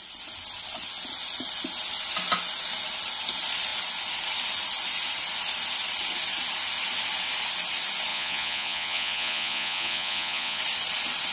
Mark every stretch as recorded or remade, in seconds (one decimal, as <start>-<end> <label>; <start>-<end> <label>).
0.0-8.1 recorded; 8.1-10.6 remade; 10.6-11.3 recorded